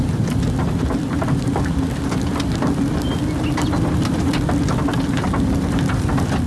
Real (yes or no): yes